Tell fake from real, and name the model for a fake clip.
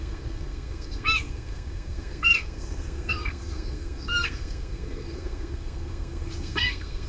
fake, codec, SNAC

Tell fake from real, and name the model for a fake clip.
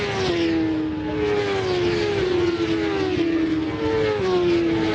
real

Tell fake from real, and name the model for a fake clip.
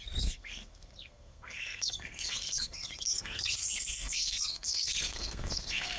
fake, codec, SNAC